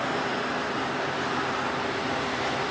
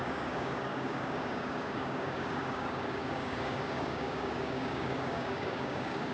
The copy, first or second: second